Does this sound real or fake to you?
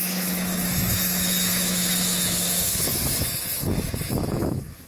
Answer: fake